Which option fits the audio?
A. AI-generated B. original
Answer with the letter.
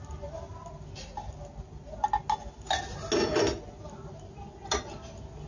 B